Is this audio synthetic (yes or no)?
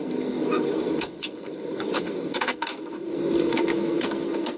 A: yes